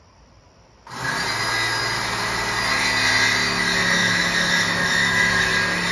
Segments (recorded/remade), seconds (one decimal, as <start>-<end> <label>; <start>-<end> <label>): 0.0-4.0 recorded; 4.0-5.5 remade; 5.5-5.9 recorded